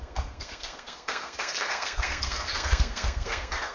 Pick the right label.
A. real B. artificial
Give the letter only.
B